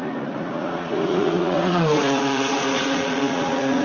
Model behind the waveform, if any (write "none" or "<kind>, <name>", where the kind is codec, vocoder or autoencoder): vocoder, Vocos